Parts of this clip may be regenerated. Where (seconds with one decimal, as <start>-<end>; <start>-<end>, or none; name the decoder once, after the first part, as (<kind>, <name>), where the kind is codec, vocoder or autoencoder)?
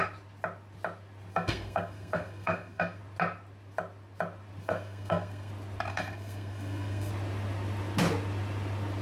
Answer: 1.3-3.0 (codec, SNAC); 4.6-5.5; 5.9-7.1